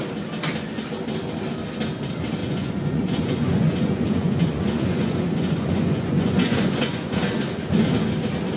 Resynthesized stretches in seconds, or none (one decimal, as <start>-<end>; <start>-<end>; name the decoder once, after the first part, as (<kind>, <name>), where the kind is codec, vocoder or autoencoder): 2.4-7.4 (vocoder, Vocos)